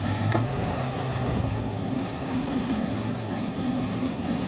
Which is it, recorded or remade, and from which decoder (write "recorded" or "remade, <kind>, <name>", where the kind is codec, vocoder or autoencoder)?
remade, codec, SNAC